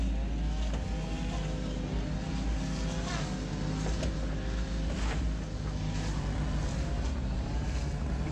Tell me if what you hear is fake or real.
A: real